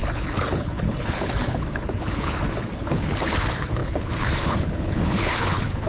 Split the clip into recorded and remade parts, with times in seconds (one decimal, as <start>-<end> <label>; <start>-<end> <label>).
0.0-5.9 remade